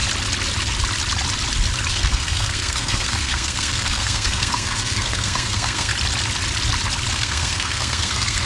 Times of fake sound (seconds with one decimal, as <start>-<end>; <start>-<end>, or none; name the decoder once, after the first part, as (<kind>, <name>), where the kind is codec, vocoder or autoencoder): 1.9-5.9 (codec, SNAC); 7.1-8.5